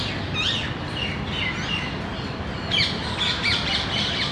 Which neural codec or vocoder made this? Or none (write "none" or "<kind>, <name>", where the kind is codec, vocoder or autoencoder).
none